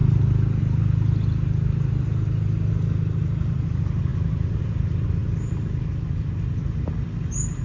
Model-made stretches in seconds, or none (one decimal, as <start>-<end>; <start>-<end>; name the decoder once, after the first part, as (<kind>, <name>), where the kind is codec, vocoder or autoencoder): none